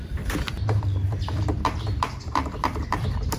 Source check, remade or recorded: remade